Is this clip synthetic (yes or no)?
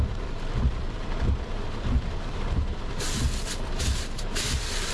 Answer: yes